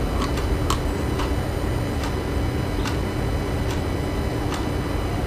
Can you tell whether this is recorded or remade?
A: recorded